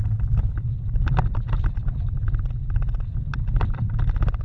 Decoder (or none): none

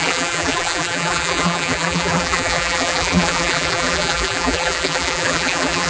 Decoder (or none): vocoder, BigVGAN v2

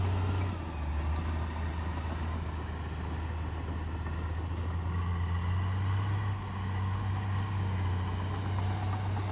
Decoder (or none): none